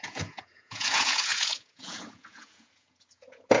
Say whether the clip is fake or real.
fake